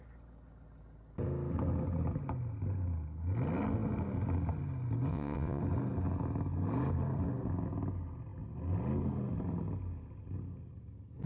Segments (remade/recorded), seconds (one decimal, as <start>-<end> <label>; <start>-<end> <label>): 0.0-5.1 recorded; 5.1-5.6 remade; 5.6-11.3 recorded